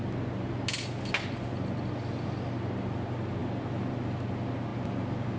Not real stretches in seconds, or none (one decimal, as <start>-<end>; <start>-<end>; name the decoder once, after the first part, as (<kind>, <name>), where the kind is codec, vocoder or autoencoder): none